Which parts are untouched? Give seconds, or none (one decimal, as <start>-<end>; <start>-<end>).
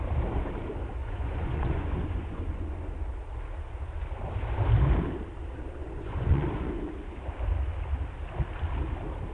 0.0-1.0; 2.9-5.8; 6.8-9.3